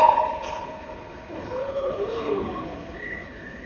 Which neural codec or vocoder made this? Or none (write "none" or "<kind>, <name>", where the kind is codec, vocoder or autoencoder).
codec, HILCodec